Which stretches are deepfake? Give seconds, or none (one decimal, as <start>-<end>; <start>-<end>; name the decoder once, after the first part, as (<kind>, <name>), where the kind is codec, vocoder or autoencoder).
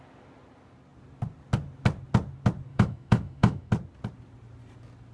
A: 2.7-3.7 (autoencoder, DAC-VAE)